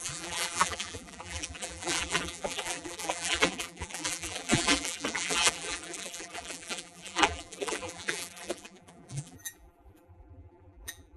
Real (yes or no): no